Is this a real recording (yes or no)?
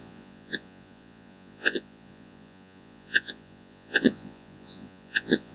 no